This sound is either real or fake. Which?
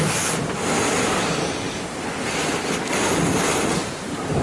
real